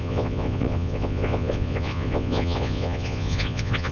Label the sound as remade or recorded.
remade